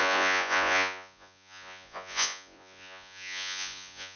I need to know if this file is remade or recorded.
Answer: remade